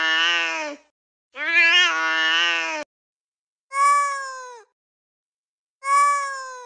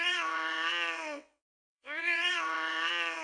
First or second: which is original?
first